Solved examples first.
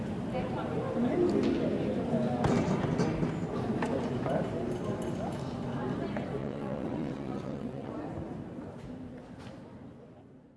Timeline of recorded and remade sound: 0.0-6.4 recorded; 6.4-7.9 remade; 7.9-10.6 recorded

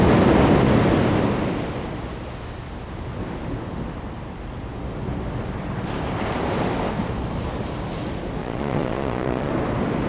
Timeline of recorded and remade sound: 0.0-8.4 recorded; 8.4-9.5 remade; 9.5-10.1 recorded

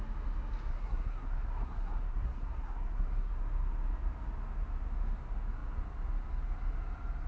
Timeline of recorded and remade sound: 0.0-0.7 recorded; 0.7-3.3 remade; 3.3-7.3 recorded

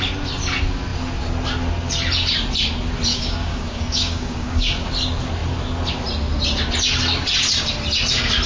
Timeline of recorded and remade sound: 0.0-3.1 recorded; 3.1-4.9 remade; 4.9-8.5 recorded

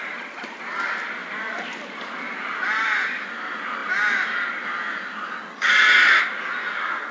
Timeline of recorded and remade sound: 0.0-5.5 recorded; 5.5-6.2 remade; 6.2-7.1 recorded